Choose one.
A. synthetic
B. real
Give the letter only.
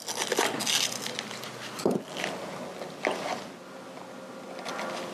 B